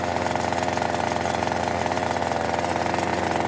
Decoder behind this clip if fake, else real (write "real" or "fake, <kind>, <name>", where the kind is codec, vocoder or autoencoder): real